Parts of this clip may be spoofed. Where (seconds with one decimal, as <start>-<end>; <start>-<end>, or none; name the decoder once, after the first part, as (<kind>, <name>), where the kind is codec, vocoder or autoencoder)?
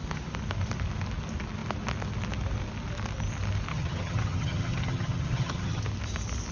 3.7-5.8 (vocoder, HiFi-GAN)